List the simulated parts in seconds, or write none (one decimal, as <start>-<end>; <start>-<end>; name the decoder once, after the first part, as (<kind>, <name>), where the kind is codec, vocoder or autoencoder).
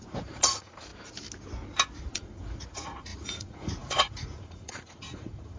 0.0-0.9 (vocoder, Vocos); 2.0-5.6